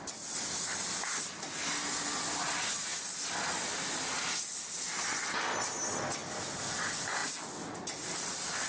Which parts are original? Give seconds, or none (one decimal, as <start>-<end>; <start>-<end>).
0.0-8.7